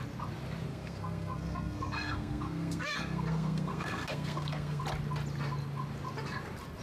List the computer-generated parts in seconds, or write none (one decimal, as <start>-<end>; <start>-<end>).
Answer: 0.7-4.8